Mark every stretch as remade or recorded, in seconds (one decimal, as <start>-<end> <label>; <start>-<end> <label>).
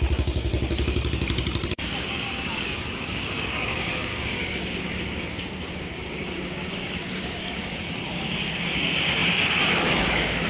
0.0-0.5 remade; 0.5-1.7 recorded; 1.7-10.5 remade